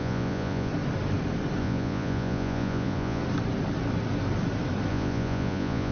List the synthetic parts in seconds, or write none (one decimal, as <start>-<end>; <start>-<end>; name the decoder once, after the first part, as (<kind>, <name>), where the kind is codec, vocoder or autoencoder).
0.0-0.7 (vocoder, Vocos); 1.6-3.2; 4.9-5.9